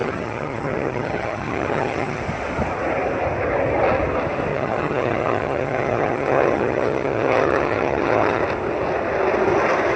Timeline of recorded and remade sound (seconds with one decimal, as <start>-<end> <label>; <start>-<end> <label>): 0.0-2.2 remade; 2.2-4.5 recorded; 4.5-8.4 remade; 8.4-10.0 recorded